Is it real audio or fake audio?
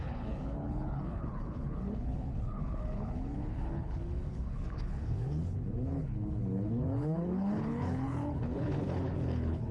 fake